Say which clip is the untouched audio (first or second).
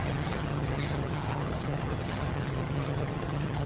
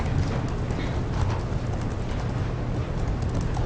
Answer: second